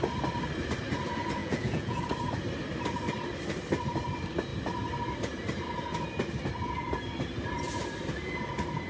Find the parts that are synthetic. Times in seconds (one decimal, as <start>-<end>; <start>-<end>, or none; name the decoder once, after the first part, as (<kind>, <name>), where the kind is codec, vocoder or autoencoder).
1.4-2.0 (vocoder, Vocos)

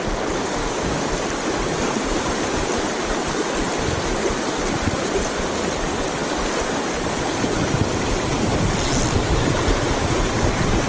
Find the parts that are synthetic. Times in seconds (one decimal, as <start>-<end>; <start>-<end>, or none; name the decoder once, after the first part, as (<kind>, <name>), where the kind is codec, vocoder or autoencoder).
0.6-1.1 (codec, DAC)